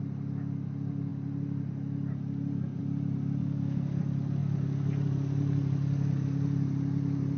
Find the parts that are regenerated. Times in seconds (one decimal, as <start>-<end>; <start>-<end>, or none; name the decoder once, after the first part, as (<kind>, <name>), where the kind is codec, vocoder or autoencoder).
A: 3.4-4.0 (codec, SNAC)

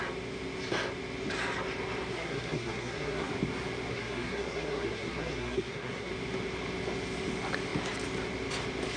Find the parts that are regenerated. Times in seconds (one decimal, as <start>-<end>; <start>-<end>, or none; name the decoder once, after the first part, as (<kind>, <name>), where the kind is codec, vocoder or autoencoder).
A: 2.1-3.3 (codec, SNAC); 3.9-6.1

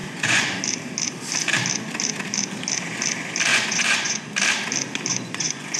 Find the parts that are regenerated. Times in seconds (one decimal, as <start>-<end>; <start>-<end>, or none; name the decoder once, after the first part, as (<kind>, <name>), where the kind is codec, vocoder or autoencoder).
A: 0.0-0.6 (vocoder, Vocos); 3.5-4.3; 5.1-5.8

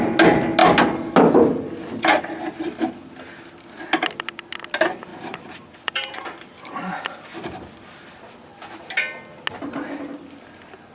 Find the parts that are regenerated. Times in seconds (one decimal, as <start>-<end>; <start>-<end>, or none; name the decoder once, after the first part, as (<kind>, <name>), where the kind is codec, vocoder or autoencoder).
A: 5.1-8.1 (vocoder, BigVGAN v2)

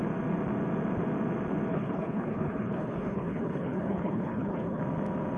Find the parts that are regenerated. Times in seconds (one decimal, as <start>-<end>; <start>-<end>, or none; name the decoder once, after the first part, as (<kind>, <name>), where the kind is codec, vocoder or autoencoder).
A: 1.7-4.8 (codec, HILCodec)